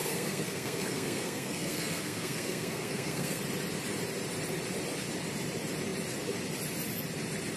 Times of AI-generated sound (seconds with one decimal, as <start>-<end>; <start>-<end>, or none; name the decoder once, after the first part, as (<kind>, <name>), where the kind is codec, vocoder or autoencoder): 0.0-3.4 (codec, SNAC)